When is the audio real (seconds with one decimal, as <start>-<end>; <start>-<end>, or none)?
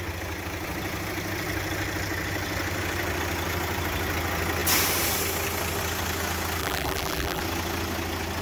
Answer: 0.0-6.6; 7.4-8.4